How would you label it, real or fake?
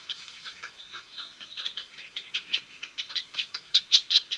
fake